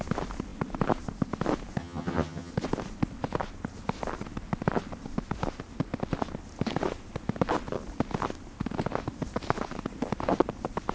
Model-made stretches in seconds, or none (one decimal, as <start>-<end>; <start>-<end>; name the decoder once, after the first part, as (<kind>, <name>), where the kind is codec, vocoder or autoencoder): 1.8-2.5 (vocoder, HiFi-GAN)